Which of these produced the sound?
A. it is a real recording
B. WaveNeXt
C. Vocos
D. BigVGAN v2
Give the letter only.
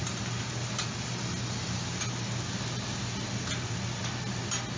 A